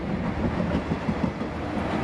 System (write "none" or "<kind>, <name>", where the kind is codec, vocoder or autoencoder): none